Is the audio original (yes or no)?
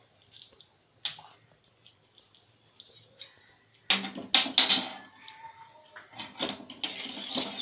yes